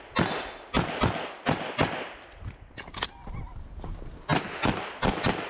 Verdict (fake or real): real